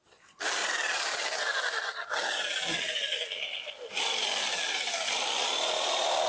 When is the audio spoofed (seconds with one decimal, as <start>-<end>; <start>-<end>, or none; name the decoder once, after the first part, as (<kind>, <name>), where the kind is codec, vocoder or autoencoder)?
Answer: none